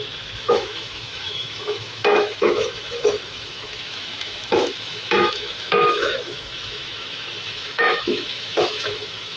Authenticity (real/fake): fake